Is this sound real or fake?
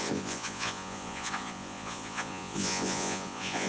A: fake